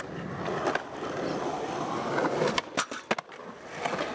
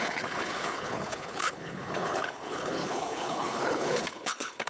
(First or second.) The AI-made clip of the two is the second